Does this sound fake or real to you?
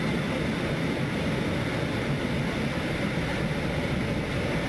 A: real